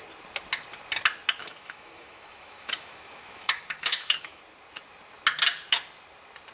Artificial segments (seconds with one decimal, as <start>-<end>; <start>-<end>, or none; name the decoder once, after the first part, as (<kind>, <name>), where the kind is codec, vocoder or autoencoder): 1.4-4.4 (autoencoder, DAC-VAE)